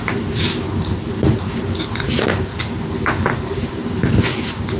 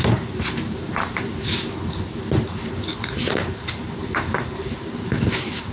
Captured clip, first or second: first